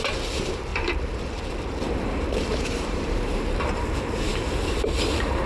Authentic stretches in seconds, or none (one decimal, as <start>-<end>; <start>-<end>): none